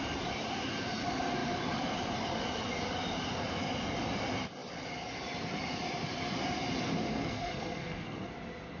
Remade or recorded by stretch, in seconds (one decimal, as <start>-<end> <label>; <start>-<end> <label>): 0.0-7.1 recorded; 7.1-8.3 remade; 8.3-8.8 recorded